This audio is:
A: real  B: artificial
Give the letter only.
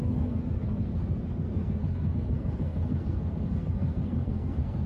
B